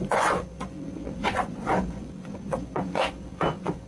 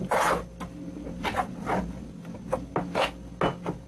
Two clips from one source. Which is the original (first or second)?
second